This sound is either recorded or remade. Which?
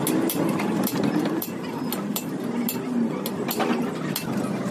recorded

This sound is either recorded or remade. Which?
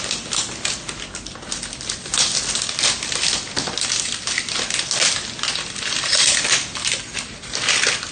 recorded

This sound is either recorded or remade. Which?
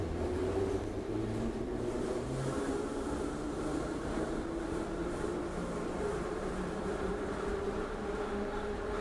remade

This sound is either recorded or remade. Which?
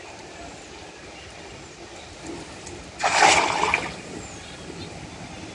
recorded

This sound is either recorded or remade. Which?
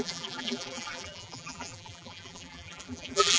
remade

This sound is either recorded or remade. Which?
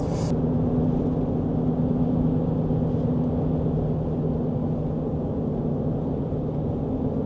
recorded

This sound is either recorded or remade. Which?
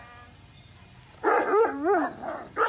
recorded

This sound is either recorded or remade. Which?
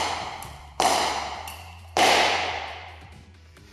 remade